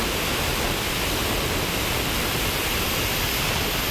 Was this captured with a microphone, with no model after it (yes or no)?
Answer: yes